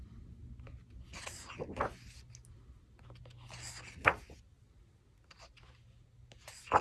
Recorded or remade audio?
recorded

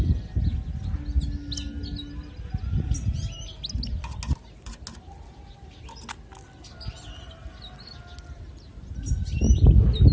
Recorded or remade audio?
recorded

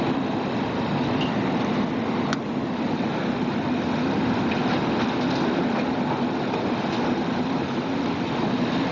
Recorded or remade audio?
recorded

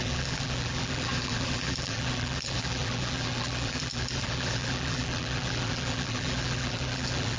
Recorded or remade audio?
remade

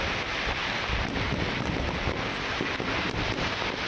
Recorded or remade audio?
recorded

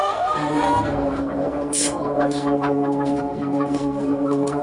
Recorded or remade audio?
remade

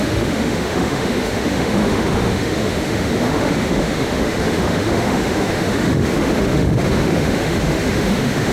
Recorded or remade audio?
remade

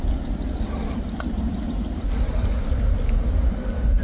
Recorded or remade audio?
recorded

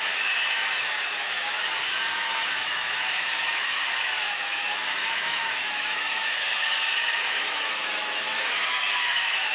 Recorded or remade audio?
remade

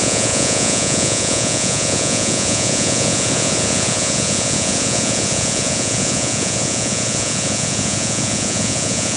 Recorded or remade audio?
remade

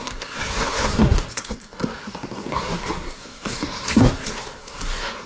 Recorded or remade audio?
remade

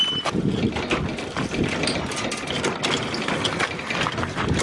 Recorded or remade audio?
recorded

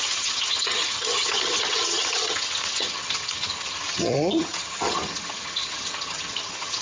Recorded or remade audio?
remade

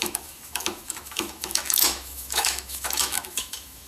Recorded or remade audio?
remade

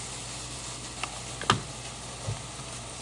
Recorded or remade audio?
recorded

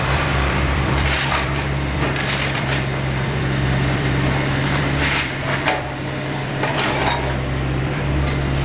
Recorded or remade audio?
remade